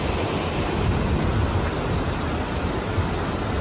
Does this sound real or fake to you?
real